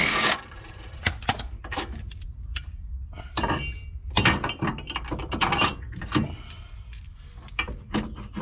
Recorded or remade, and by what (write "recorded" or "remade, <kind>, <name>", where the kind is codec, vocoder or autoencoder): recorded